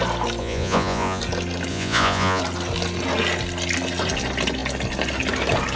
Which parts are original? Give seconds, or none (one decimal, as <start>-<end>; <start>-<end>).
0.0-0.4; 1.2-1.7; 2.4-5.8